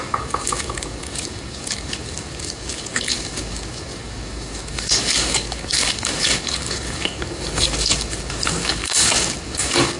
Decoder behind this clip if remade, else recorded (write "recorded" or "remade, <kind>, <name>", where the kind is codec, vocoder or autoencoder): remade, codec, DAC